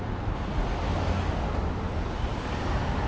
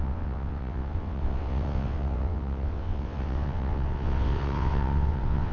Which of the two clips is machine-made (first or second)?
second